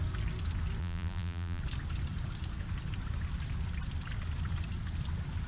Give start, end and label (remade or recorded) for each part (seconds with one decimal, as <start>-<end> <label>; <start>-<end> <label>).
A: 0.0-0.8 recorded; 0.8-1.6 remade; 1.6-5.5 recorded

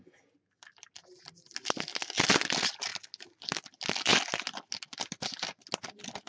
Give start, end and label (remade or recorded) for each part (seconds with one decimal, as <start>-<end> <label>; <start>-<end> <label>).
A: 0.0-6.3 recorded

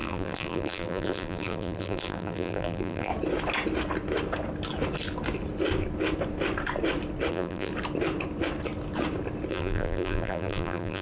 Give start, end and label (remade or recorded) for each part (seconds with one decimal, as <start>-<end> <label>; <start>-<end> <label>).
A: 0.0-3.1 remade; 3.1-7.3 recorded; 7.3-7.7 remade; 7.7-9.5 recorded; 9.5-11.0 remade

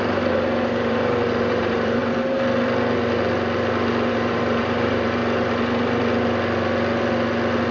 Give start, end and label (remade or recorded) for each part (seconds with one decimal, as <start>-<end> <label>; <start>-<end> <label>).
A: 0.0-2.0 remade; 2.0-4.1 recorded; 4.1-5.2 remade; 5.2-7.7 recorded